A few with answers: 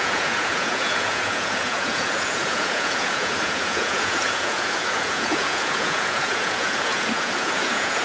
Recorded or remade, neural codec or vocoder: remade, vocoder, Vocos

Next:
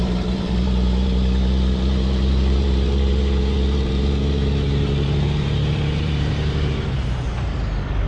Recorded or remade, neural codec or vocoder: remade, vocoder, BigVGAN v2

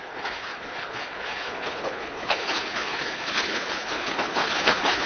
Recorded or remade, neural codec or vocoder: remade, codec, HILCodec